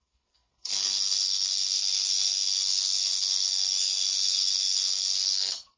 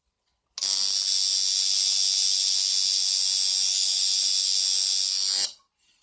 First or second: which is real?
second